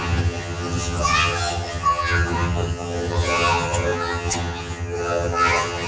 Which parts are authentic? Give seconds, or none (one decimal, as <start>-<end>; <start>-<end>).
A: none